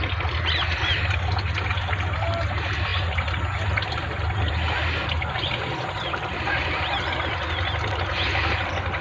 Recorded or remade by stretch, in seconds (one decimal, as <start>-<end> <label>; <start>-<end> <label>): 0.0-9.0 recorded

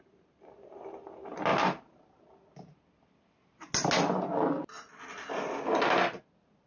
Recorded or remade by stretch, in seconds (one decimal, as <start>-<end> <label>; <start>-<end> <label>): 0.0-6.7 recorded